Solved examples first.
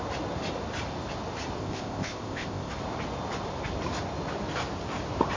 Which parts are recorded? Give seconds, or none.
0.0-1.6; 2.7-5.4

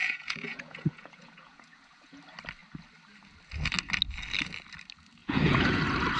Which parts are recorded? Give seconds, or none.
2.2-5.2; 5.8-6.2